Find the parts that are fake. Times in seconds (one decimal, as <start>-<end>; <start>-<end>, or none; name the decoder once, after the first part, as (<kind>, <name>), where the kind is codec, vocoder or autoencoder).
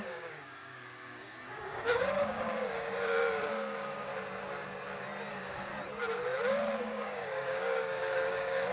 0.0-4.1 (codec, DAC); 5.3-5.7; 6.8-8.7